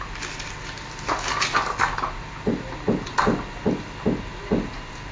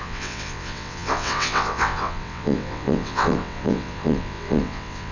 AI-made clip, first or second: second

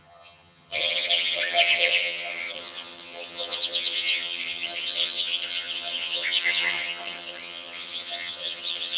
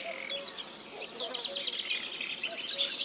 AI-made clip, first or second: first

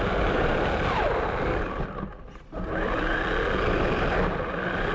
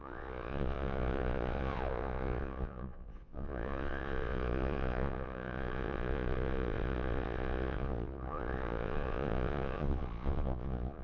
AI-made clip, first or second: second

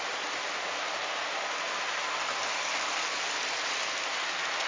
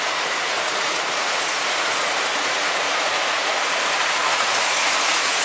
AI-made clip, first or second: second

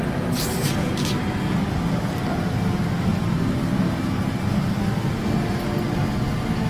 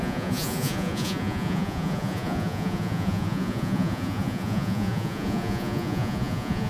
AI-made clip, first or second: second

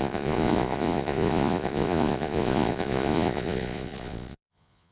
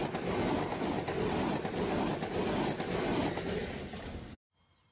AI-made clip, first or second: first